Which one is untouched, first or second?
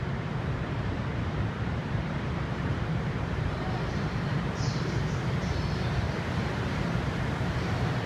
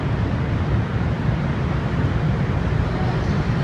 second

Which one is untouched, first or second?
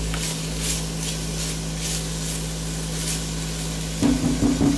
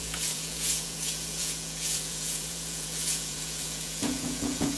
first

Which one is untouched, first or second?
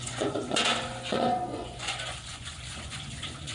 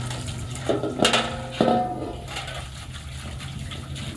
second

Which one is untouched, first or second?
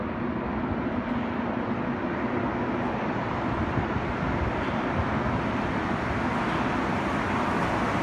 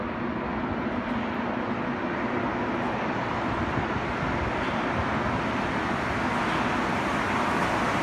second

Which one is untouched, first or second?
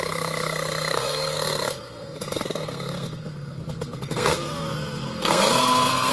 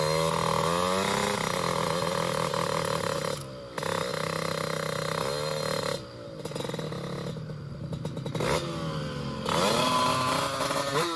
second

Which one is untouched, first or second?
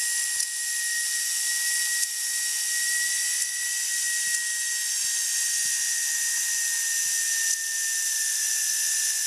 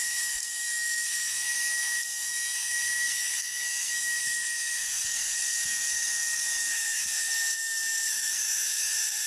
first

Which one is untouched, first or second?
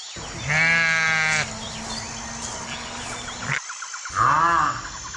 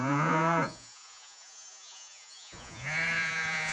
first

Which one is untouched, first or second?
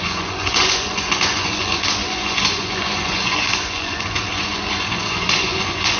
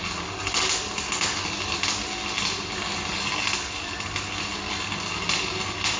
second